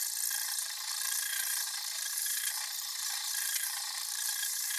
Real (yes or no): no